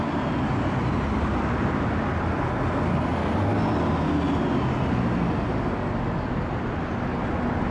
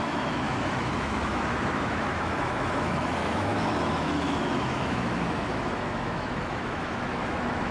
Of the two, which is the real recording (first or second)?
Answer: first